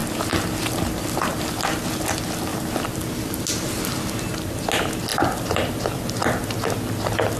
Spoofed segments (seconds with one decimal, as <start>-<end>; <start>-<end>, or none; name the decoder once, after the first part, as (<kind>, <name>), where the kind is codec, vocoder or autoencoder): 0.0-1.8 (vocoder, BigVGAN v2); 2.5-3.1; 5.1-5.7